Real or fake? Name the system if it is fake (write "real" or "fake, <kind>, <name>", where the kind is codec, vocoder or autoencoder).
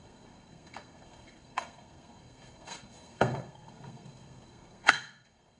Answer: fake, codec, SNAC